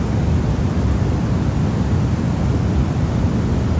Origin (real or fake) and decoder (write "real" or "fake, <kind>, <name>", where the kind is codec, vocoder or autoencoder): real